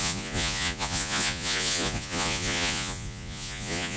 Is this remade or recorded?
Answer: remade